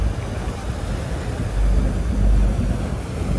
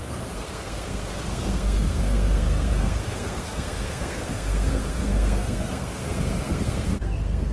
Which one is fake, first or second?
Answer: second